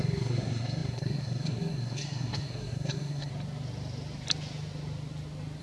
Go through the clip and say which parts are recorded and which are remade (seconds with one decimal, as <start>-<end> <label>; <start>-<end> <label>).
0.0-3.3 remade; 3.3-5.6 recorded